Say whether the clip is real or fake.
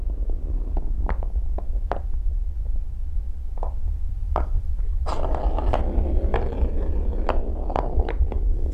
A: real